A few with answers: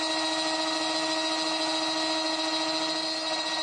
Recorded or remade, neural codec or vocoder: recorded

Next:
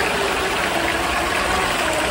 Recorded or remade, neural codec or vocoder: recorded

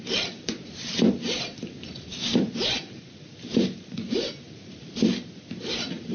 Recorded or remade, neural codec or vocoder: remade, vocoder, BigVGAN v2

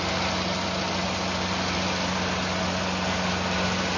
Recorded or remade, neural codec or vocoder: recorded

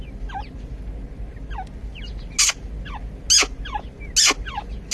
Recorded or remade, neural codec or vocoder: recorded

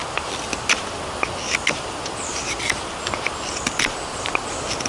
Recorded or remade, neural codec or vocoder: recorded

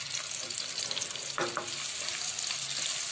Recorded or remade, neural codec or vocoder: recorded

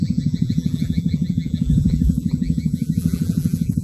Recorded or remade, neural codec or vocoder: remade, vocoder, BigVGAN v2